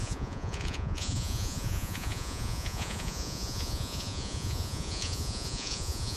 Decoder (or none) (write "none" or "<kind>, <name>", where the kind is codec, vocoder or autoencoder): vocoder, Vocos